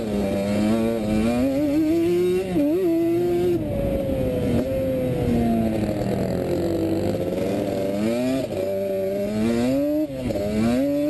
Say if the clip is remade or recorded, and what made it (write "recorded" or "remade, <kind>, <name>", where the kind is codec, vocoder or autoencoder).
recorded